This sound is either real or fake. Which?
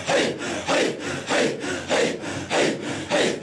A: real